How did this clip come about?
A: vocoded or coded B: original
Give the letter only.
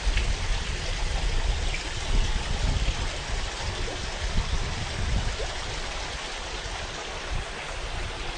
B